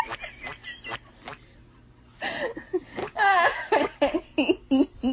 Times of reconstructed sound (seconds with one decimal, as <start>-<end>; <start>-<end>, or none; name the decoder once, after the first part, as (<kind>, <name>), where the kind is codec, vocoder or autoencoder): 3.0-4.0 (codec, DAC)